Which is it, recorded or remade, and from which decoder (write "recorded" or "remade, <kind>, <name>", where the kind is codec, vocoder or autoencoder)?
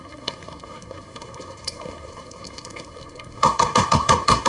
remade, codec, SNAC